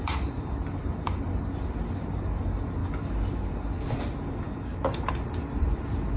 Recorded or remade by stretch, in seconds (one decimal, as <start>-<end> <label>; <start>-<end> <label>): 0.0-6.2 recorded